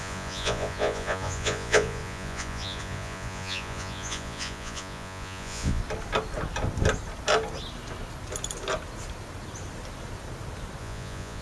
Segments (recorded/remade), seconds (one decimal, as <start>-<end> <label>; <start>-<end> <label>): 0.0-5.8 remade; 5.8-10.8 recorded; 10.8-11.4 remade